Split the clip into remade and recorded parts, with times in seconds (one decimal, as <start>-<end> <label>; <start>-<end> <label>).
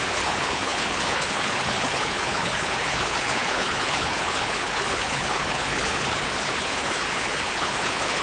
0.0-8.2 remade